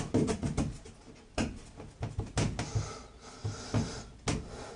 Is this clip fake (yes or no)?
no